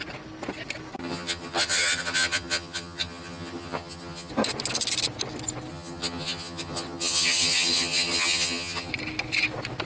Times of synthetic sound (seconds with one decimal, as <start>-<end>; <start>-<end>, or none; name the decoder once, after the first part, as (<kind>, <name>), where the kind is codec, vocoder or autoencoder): 1.0-4.3 (vocoder, HiFi-GAN); 5.7-8.9